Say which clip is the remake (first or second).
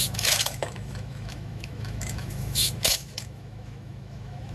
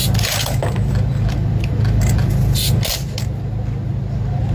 first